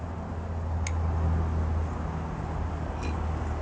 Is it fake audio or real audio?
real